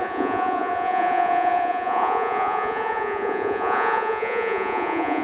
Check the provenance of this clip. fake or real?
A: fake